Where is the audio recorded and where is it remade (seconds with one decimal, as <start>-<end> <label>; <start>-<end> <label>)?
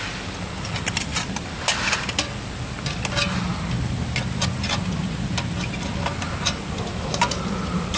0.0-8.0 recorded